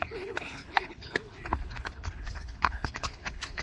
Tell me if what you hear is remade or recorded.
remade